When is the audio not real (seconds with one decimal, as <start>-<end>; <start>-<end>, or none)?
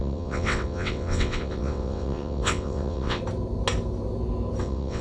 0.0-3.2; 4.6-5.0